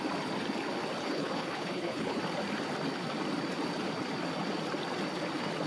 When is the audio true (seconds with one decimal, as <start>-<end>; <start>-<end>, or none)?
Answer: 0.0-1.0; 2.2-5.7